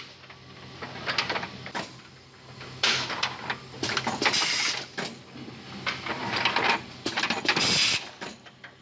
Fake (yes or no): no